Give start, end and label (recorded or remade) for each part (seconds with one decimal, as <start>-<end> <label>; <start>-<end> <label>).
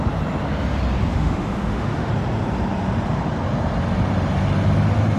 0.0-1.1 recorded; 1.1-2.1 remade; 2.1-5.2 recorded